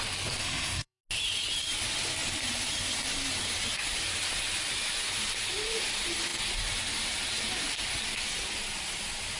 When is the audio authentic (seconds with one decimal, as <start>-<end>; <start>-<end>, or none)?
0.0-0.4; 1.0-9.4